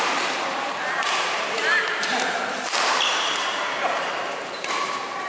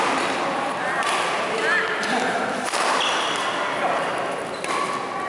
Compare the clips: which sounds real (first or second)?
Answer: second